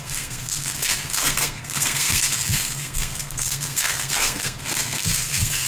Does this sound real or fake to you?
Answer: fake